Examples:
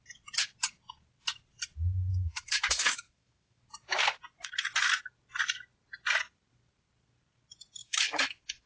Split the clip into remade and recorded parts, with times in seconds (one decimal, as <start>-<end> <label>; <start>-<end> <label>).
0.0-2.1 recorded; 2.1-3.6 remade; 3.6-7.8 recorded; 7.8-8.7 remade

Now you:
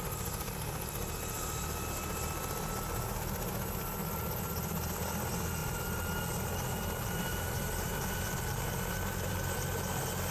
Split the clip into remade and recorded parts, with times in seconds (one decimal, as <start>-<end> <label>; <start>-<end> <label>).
0.0-5.6 recorded; 5.6-9.4 remade; 9.4-10.3 recorded

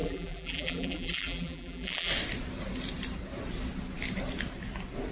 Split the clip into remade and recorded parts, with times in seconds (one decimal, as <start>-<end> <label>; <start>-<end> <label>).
0.0-2.1 remade; 2.1-5.1 recorded

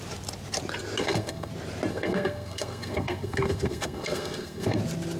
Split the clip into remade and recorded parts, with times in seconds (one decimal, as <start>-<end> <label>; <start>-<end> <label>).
0.0-1.0 recorded; 1.0-1.5 remade; 1.5-1.9 recorded; 1.9-4.8 remade; 4.8-5.2 recorded

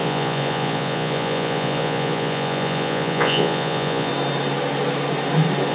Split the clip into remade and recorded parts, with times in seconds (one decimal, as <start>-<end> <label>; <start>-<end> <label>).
0.0-4.1 remade; 4.1-5.7 recorded

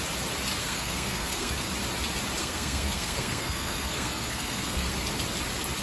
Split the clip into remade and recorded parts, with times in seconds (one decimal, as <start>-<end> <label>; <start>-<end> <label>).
0.0-0.6 recorded; 0.6-1.7 remade; 1.7-2.4 recorded; 2.4-4.9 remade; 4.9-5.8 recorded

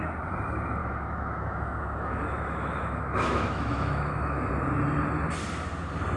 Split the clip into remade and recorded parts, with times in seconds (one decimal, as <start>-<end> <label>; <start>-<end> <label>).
0.0-0.8 recorded; 0.8-4.5 remade; 4.5-6.2 recorded

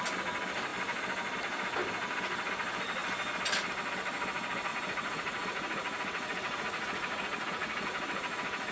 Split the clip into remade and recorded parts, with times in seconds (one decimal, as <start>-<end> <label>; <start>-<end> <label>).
0.0-4.7 recorded; 4.7-8.7 remade